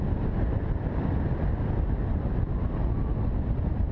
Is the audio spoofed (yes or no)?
no